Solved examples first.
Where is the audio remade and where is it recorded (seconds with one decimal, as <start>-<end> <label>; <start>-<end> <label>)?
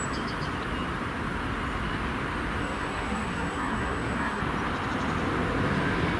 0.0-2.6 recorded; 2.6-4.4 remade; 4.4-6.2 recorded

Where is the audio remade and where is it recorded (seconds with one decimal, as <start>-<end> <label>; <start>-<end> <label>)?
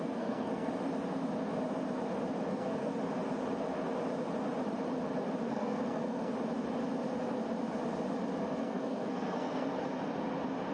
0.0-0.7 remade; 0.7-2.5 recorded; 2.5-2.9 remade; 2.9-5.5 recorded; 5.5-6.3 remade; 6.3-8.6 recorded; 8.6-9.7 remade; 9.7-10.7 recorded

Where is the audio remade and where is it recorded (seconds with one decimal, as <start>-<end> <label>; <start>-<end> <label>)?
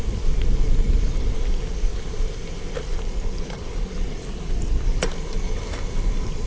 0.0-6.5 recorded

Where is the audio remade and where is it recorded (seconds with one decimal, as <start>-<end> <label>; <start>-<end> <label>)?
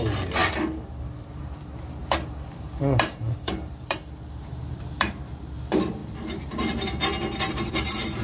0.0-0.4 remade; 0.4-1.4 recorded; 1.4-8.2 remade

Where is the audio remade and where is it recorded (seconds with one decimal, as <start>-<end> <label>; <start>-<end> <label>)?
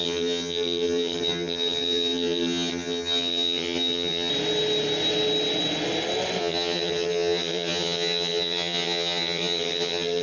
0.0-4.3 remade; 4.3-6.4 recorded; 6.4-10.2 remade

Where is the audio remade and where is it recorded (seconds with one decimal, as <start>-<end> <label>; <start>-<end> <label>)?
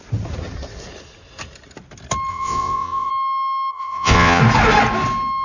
0.0-2.3 recorded; 2.3-3.1 remade; 3.1-3.7 recorded; 3.7-4.4 remade; 4.4-5.4 recorded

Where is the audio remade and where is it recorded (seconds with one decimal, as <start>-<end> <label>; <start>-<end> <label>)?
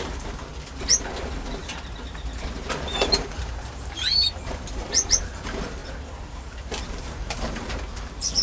0.0-0.5 remade; 0.5-2.7 recorded; 2.7-5.8 remade; 5.8-6.8 recorded; 6.8-8.4 remade